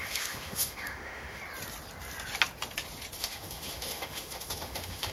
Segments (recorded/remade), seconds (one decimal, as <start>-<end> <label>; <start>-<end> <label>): 0.0-1.4 remade; 1.4-3.2 recorded; 3.2-5.1 remade